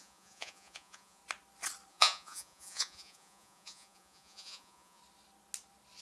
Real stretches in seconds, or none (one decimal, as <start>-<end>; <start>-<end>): 1.2-1.9; 5.0-6.0